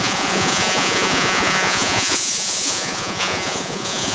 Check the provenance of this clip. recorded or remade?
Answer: remade